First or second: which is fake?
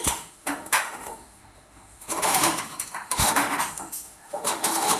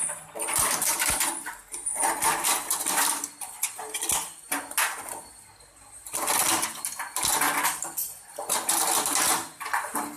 first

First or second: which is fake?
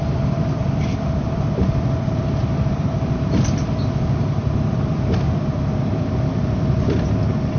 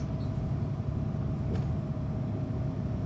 first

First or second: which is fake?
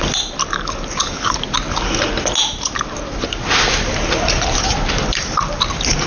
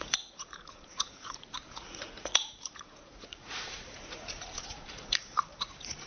second